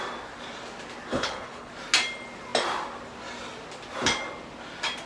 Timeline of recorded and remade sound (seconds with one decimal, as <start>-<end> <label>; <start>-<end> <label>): 0.0-1.1 recorded; 1.1-1.7 remade; 1.7-5.1 recorded